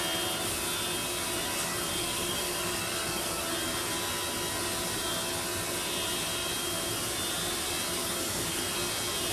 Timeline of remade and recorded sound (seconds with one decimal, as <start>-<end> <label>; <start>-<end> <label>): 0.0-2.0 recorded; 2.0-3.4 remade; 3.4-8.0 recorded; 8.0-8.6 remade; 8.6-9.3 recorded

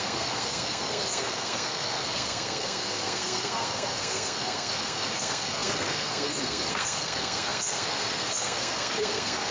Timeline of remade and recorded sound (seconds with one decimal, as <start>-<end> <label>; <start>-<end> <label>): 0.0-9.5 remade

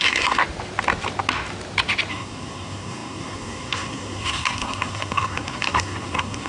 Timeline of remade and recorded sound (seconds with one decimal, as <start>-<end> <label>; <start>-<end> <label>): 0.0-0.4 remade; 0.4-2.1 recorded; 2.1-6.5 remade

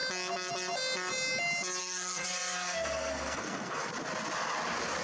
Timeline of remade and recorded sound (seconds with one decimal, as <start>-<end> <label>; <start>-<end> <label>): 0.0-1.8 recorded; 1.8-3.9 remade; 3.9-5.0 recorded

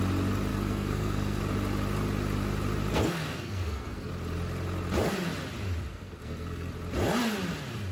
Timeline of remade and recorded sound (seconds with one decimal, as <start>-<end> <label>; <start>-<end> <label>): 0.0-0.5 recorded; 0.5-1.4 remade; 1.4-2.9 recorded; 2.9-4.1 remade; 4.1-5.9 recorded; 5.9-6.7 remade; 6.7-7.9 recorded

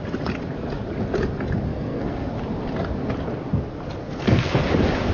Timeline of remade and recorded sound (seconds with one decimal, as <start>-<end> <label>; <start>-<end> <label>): 0.0-1.7 recorded; 1.7-2.3 remade; 2.3-4.0 recorded; 4.0-4.6 remade; 4.6-5.1 recorded

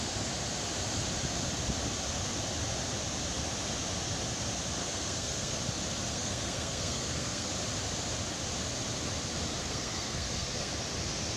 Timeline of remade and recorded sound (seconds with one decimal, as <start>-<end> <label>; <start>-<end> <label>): 0.0-4.8 recorded; 4.8-5.6 remade; 5.6-6.1 recorded; 6.1-7.5 remade; 7.5-9.6 recorded; 9.6-10.7 remade; 10.7-11.4 recorded